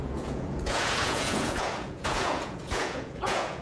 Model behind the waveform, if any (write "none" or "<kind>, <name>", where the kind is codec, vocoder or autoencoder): vocoder, Vocos